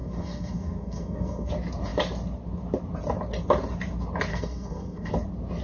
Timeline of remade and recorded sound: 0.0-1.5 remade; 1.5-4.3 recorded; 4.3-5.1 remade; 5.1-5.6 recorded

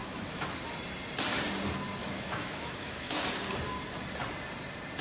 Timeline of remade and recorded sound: 0.0-0.5 remade; 0.5-2.0 recorded; 2.0-3.2 remade; 3.2-5.0 recorded